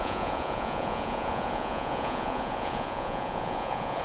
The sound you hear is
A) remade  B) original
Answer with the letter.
A